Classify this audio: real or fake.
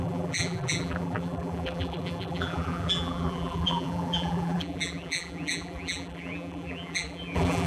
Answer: fake